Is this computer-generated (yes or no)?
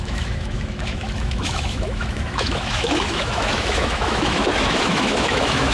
yes